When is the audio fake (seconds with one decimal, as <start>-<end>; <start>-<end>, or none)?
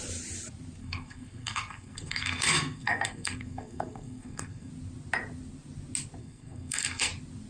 0.8-4.7; 6.2-7.1